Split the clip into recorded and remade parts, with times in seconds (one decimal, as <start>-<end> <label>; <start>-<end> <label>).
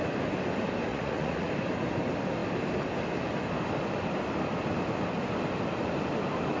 0.0-0.9 recorded; 0.9-1.5 remade; 1.5-6.6 recorded